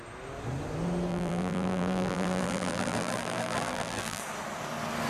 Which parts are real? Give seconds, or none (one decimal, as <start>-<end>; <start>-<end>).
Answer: 0.0-1.1; 4.2-5.1